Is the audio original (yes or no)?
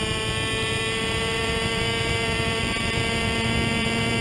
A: no